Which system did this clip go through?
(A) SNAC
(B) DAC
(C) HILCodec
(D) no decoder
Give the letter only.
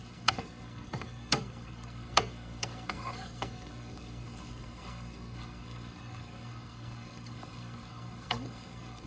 A